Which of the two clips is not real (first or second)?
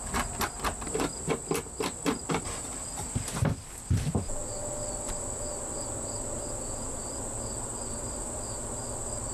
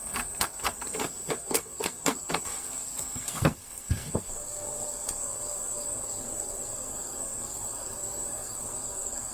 second